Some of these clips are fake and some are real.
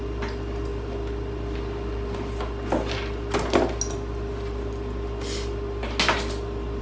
real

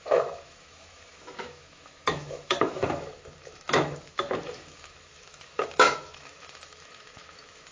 fake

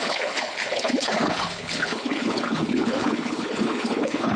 fake